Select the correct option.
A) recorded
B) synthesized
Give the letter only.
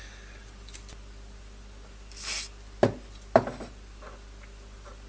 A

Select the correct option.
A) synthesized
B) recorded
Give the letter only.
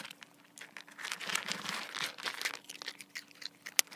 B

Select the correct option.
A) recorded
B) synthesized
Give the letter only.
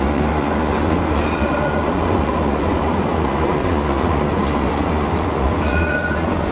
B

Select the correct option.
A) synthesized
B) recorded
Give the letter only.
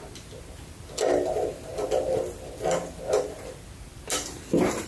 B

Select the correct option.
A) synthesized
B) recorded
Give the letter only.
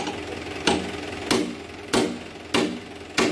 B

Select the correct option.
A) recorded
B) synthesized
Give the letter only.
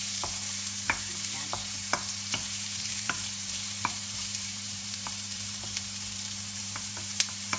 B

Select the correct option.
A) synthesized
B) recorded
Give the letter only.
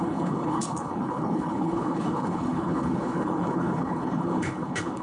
A